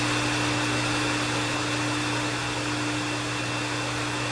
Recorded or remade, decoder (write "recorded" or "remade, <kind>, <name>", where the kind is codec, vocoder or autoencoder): recorded